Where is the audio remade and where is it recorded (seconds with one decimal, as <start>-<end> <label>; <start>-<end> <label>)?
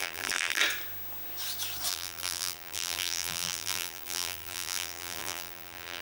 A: 0.0-0.6 remade; 0.6-1.9 recorded; 1.9-6.0 remade